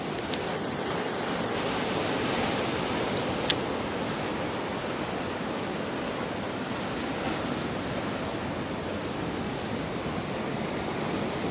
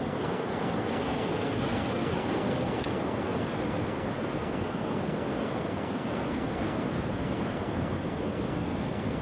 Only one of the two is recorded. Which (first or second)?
first